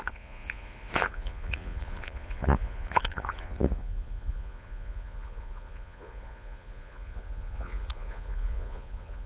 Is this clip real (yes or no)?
no